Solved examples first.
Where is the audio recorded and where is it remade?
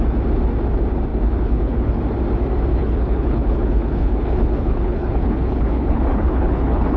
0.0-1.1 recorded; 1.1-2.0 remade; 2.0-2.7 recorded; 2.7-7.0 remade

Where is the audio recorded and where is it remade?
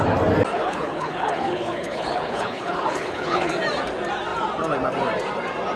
0.0-0.5 recorded; 0.5-3.5 remade; 3.5-5.8 recorded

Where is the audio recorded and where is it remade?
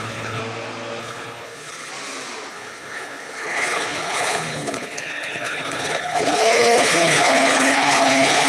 0.0-0.4 remade; 0.4-1.0 recorded; 1.0-1.9 remade; 1.9-2.5 recorded; 2.5-8.5 remade